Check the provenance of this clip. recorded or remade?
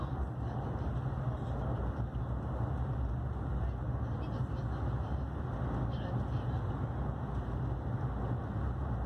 recorded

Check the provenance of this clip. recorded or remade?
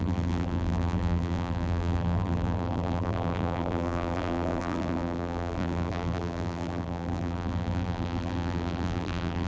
remade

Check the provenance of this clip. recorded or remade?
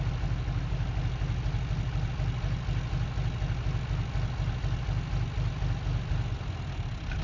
recorded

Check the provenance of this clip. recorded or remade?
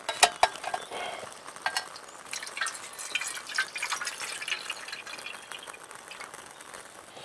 recorded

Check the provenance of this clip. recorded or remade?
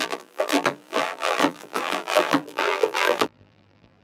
remade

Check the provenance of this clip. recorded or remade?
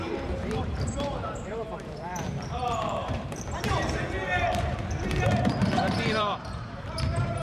remade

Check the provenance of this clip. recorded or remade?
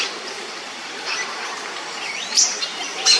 remade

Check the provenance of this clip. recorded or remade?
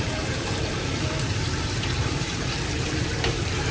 remade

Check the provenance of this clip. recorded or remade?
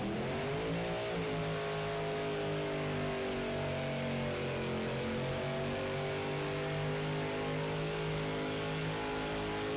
recorded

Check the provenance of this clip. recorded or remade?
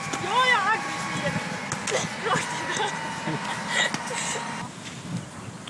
recorded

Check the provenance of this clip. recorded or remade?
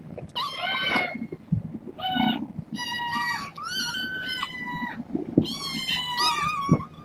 recorded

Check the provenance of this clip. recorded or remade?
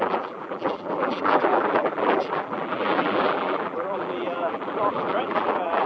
remade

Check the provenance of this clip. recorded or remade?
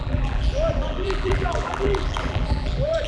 remade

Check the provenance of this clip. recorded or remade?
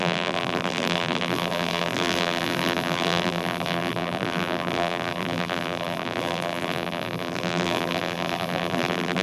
remade